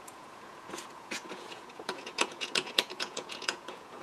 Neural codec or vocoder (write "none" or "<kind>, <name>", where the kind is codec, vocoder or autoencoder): vocoder, Vocos